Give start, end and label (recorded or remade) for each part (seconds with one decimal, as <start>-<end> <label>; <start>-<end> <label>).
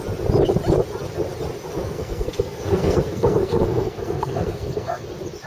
0.0-1.8 recorded; 1.8-5.1 remade; 5.1-5.5 recorded